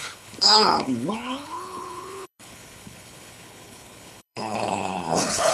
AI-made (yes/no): yes